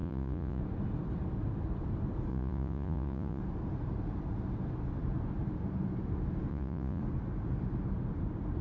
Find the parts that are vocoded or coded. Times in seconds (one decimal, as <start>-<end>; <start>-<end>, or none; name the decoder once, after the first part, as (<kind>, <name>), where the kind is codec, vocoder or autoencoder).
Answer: 0.0-0.6 (vocoder, Vocos); 2.3-3.4; 6.5-7.0